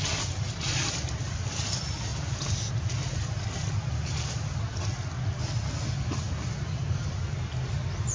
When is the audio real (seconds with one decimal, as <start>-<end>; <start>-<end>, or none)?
0.0-2.1; 2.7-8.1